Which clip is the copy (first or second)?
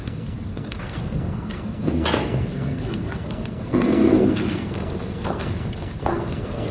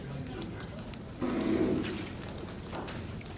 first